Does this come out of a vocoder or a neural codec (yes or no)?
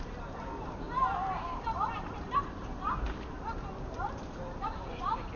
no